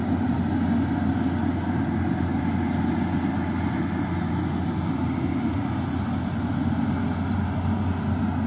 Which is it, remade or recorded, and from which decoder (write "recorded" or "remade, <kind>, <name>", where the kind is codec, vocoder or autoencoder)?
recorded